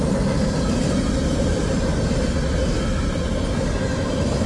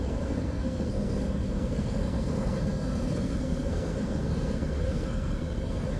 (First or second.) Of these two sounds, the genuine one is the first